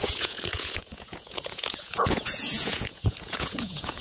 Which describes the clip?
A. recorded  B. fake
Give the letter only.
B